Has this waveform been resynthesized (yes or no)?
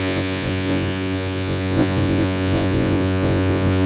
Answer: yes